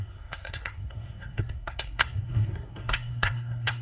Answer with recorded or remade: remade